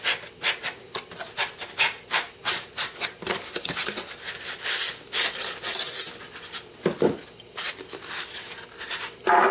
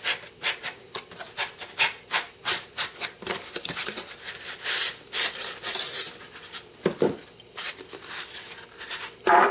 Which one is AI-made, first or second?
second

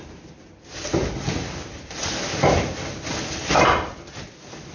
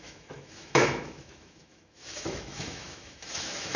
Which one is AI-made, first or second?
second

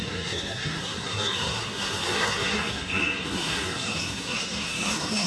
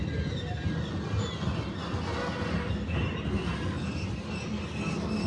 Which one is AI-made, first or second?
first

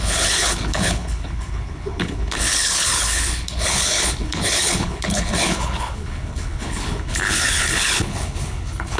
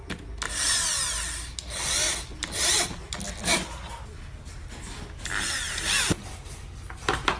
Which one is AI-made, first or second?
first